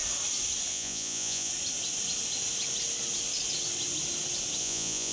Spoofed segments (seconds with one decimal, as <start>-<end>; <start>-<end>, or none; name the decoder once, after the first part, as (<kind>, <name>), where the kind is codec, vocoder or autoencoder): 0.7-1.5 (vocoder, Vocos); 4.6-5.1